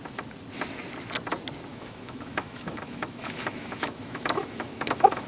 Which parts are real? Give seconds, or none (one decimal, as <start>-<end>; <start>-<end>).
0.0-1.7